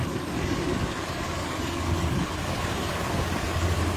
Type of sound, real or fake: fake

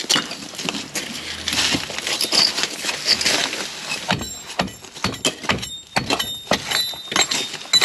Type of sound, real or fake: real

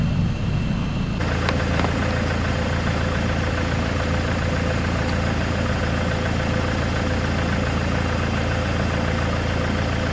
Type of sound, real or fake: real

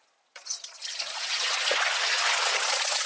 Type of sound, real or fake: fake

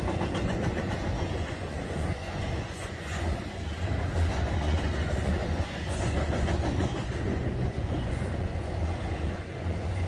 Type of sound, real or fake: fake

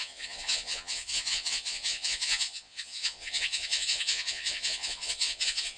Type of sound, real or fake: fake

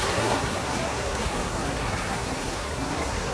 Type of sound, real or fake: fake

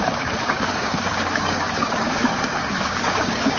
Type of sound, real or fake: fake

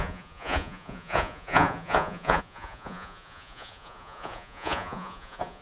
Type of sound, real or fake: fake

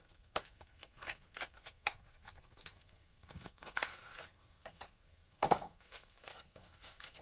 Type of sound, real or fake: fake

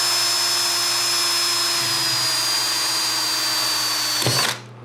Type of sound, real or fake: real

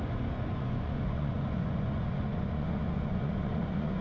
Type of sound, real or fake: fake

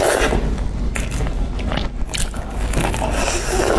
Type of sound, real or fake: real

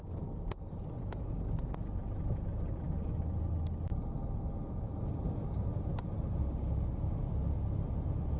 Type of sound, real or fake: real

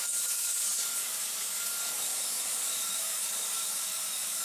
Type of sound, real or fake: fake